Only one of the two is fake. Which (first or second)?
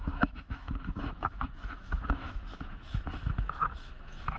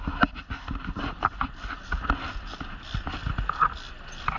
first